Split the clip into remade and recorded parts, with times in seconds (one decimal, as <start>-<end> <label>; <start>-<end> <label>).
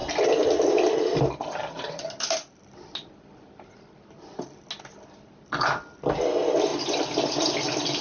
0.0-8.0 recorded